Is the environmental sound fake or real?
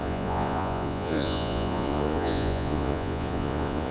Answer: fake